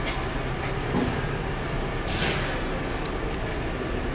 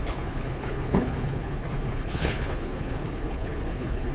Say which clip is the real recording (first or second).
first